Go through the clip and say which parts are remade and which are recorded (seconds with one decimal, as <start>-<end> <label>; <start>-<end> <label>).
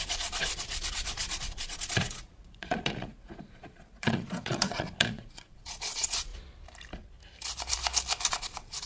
0.0-6.3 remade; 6.3-8.3 recorded; 8.3-8.9 remade